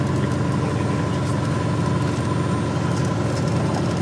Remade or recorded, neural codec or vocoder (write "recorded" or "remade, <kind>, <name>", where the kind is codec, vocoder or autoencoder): recorded